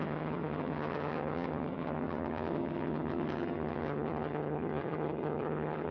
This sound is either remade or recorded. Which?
remade